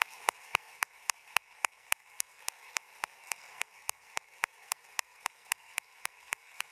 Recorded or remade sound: remade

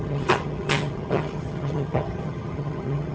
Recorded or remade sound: remade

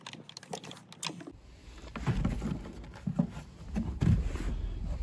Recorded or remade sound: recorded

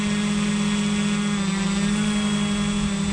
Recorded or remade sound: recorded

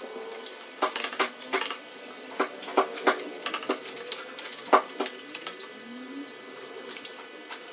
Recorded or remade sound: recorded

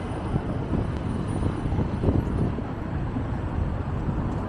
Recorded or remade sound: recorded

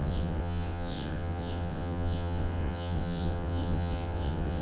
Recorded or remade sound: remade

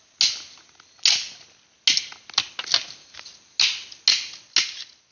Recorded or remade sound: recorded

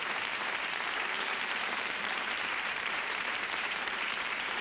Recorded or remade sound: remade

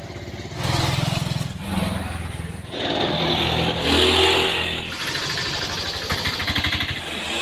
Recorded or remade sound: recorded